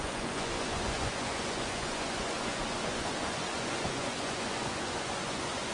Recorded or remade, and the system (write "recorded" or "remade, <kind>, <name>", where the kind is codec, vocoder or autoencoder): remade, vocoder, Vocos